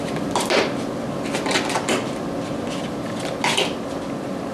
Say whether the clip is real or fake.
real